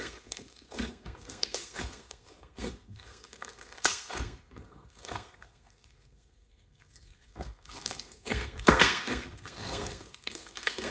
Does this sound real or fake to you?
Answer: fake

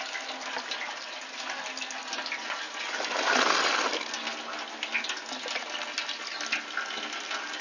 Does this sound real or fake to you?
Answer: real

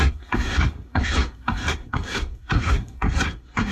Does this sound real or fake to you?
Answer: fake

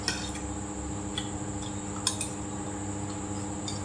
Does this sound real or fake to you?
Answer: real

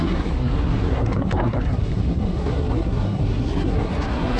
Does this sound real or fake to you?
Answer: fake